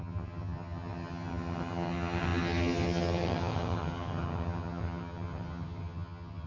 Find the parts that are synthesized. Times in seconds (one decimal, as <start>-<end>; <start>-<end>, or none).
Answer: 0.0-6.5